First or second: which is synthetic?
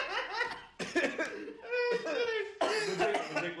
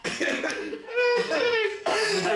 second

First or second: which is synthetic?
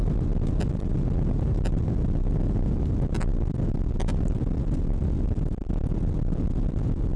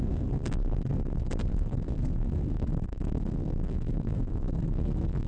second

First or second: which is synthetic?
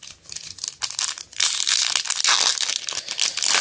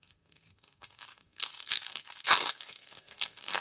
second